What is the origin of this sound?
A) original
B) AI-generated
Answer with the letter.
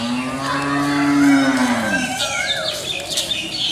A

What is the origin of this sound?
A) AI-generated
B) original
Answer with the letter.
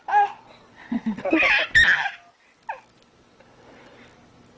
B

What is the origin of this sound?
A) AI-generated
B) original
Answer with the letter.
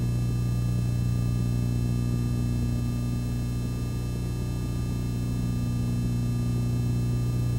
B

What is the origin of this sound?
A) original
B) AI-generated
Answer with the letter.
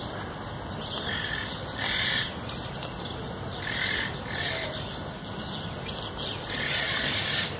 A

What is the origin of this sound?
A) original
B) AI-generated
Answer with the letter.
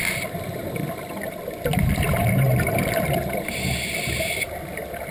A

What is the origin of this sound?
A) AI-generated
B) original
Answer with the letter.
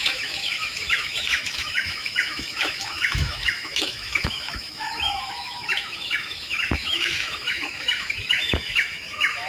A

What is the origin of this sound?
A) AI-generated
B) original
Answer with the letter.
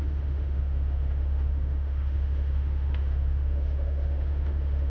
A